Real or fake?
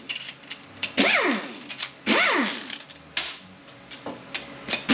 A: real